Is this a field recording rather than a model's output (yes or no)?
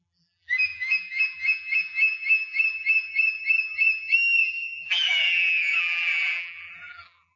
no